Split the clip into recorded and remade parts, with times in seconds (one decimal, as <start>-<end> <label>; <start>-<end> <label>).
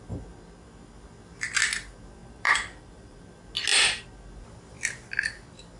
0.0-2.2 recorded; 2.2-3.2 remade; 3.2-5.8 recorded